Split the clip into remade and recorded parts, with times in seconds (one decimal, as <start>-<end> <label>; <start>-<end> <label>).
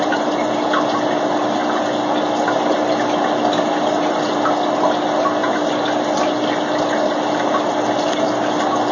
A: 0.0-8.9 recorded